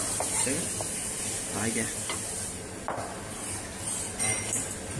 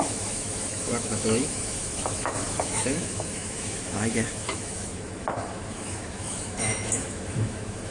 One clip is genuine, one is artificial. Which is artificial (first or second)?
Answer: second